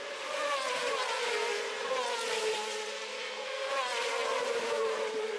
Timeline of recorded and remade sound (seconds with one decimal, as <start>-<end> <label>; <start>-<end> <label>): 0.0-3.1 recorded; 3.1-3.7 remade; 3.7-5.4 recorded